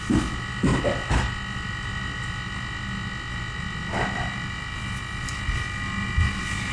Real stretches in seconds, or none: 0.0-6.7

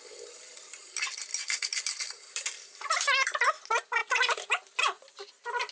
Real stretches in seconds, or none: 0.0-1.3; 3.6-4.0; 5.2-5.7

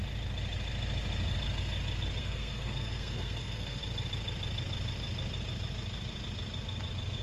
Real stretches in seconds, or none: 0.0-2.2; 3.8-7.2

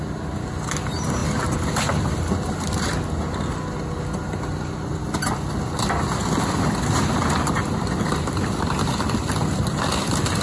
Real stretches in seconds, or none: 0.0-10.4

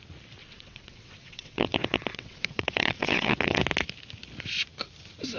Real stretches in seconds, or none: 0.0-0.4; 3.6-5.4

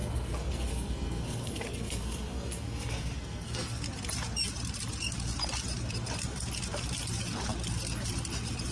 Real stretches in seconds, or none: 3.8-8.7